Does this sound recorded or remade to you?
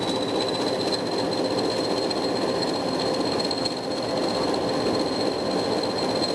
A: recorded